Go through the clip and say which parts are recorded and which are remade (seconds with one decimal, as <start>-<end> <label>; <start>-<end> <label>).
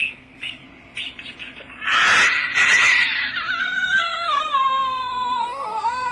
0.0-0.6 remade; 0.6-3.6 recorded; 3.6-6.1 remade